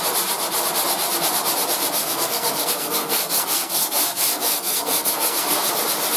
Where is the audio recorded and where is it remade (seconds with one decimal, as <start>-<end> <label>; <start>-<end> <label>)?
0.0-2.0 recorded; 2.0-5.7 remade; 5.7-6.2 recorded